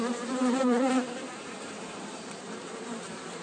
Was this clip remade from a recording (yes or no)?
yes